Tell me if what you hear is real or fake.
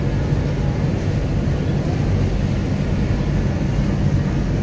real